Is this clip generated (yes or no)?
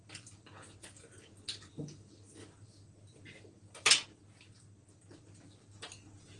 no